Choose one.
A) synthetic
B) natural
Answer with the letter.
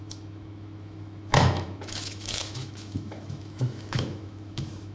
A